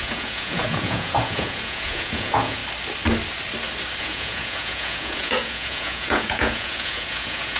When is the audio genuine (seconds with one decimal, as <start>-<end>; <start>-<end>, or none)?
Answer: 2.6-4.0